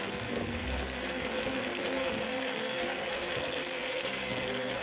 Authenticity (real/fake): fake